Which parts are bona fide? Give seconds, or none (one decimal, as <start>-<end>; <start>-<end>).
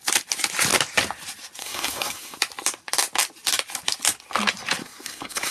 0.0-1.6; 2.4-4.8